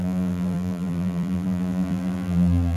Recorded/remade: remade